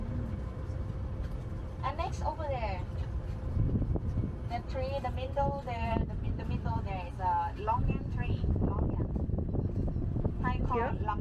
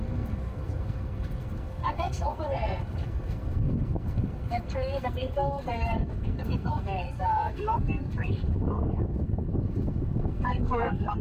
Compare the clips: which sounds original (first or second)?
first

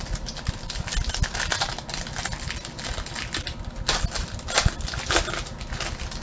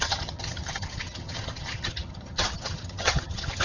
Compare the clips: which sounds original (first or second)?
first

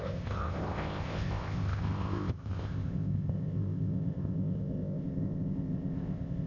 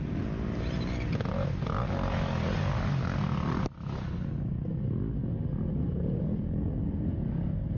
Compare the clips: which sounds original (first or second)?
second